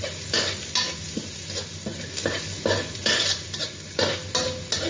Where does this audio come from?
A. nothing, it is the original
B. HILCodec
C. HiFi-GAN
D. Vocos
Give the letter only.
A